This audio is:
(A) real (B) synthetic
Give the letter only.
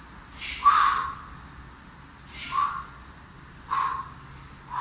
A